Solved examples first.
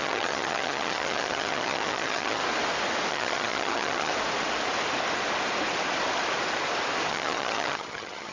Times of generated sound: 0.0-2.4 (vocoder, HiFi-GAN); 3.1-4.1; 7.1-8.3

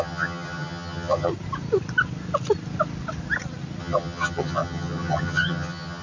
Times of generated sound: 0.0-1.3 (vocoder, HiFi-GAN); 3.8-6.0